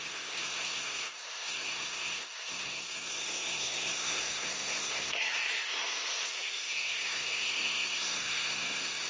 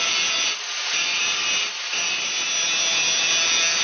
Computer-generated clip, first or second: first